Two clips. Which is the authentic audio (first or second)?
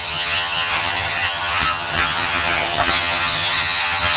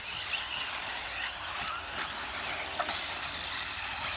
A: second